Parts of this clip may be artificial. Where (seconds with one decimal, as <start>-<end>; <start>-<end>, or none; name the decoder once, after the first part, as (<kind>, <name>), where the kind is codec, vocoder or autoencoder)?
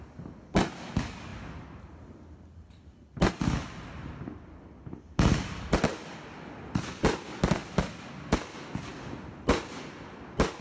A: none